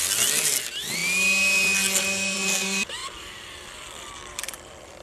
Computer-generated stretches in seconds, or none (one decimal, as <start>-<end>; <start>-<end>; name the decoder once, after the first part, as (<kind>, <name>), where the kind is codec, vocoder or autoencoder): 0.0-1.0 (vocoder, BigVGAN v2); 2.0-5.0